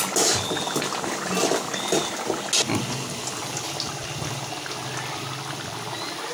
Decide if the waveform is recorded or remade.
recorded